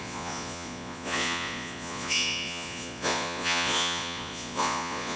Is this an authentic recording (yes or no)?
no